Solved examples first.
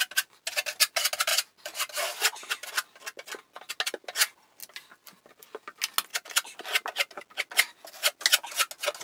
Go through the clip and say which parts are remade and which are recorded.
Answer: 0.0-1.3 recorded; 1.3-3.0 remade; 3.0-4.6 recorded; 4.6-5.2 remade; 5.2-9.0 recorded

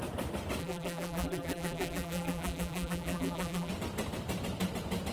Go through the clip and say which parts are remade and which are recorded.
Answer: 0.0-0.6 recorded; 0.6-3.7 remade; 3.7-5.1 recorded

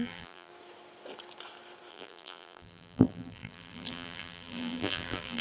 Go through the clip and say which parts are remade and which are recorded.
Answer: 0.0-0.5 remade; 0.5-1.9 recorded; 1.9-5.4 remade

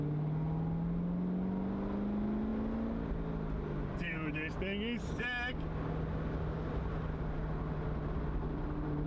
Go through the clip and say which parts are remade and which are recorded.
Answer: 0.0-9.1 recorded

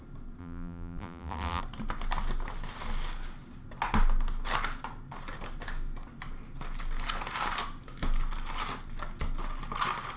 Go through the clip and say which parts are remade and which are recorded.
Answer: 0.0-0.4 recorded; 0.4-1.6 remade; 1.6-10.2 recorded

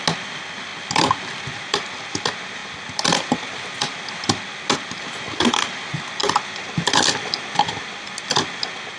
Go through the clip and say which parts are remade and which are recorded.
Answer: 0.0-6.2 recorded; 6.2-8.3 remade; 8.3-9.0 recorded